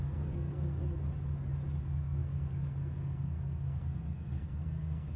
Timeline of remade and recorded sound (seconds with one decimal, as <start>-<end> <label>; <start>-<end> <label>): 0.0-0.8 remade; 0.8-1.8 recorded; 1.8-5.2 remade